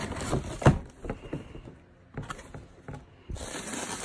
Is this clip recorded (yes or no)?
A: yes